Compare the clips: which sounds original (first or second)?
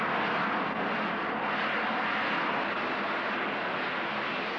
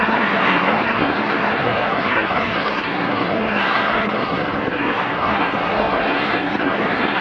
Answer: first